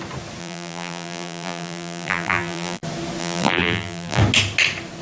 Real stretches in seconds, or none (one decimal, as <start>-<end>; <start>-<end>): 0.0-0.4; 2.8-3.2; 4.2-5.0